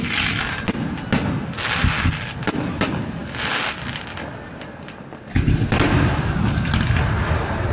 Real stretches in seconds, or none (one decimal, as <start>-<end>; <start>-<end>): 0.0-7.7